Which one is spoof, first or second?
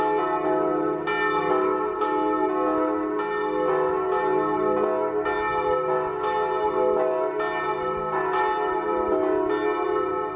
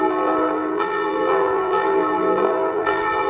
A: second